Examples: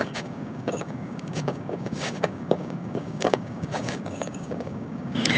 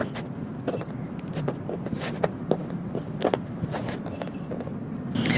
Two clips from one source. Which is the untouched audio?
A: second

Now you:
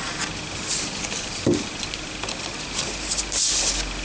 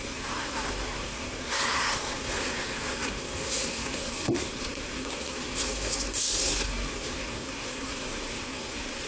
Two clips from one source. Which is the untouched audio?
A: first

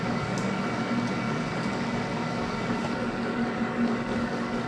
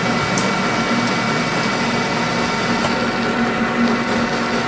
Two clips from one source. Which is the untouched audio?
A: second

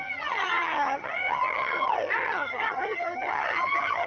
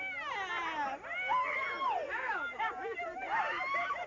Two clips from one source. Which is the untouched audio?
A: second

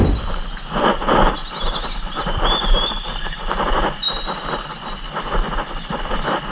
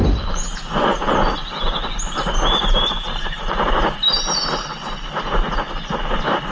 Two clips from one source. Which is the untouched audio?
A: second